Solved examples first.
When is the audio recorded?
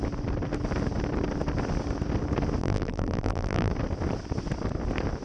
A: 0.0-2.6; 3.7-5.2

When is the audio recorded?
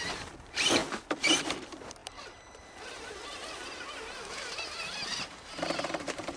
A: 0.8-1.4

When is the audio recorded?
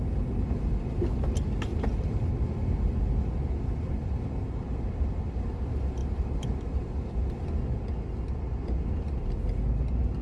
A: 0.0-1.7; 2.3-6.0; 7.3-10.2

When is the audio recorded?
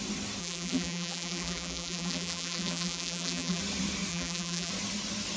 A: 0.0-0.4; 3.6-4.1; 4.7-5.4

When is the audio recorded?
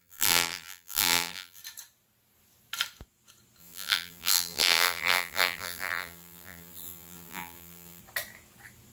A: 1.6-3.6; 8.0-8.9